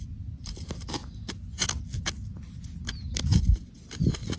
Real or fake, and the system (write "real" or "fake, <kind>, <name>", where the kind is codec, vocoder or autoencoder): real